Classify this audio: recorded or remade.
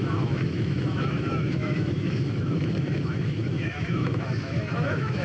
remade